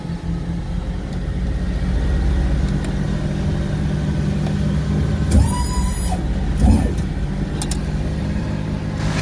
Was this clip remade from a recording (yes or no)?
no